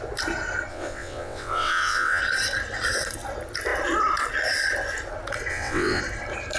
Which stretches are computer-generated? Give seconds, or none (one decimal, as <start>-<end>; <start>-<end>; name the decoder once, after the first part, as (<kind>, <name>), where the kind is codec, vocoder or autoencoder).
0.7-2.2 (vocoder, WaveNeXt); 5.5-6.0